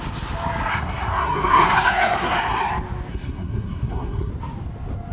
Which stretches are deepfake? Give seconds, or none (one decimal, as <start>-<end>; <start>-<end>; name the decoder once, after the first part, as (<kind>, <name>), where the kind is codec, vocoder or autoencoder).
0.7-2.7 (codec, SNAC); 3.1-4.3